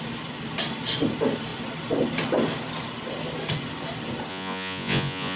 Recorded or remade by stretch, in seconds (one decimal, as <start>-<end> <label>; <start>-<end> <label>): 0.0-4.3 recorded; 4.3-5.4 remade